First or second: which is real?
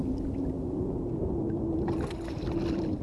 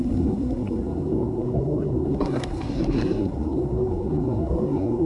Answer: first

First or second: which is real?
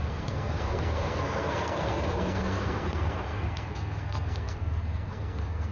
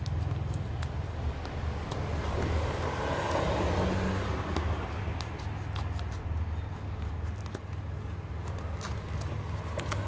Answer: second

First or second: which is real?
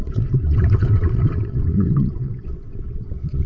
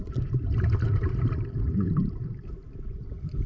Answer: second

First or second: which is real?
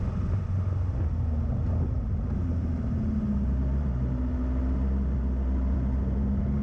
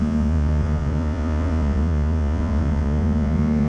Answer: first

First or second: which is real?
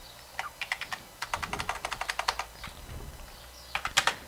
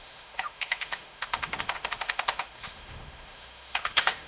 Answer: first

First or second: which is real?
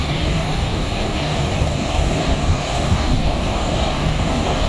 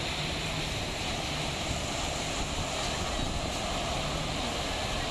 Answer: second